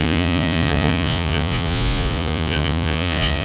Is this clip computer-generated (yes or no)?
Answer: yes